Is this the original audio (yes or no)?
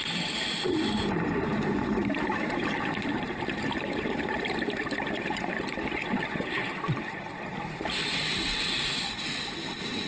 no